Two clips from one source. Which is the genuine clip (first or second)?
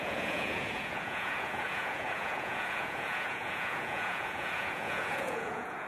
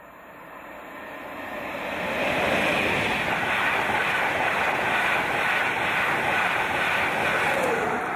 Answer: second